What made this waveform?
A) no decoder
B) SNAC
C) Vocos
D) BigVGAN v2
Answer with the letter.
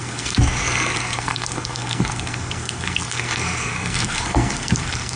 B